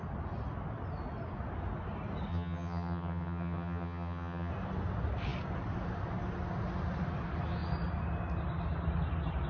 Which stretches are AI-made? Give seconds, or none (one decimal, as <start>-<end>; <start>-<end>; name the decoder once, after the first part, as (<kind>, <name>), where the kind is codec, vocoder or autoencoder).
2.3-4.5 (vocoder, HiFi-GAN)